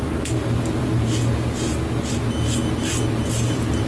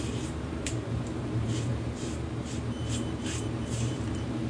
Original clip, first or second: first